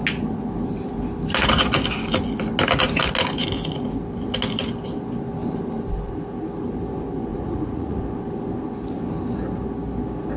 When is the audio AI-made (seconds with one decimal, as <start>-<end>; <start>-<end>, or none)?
7.3-8.0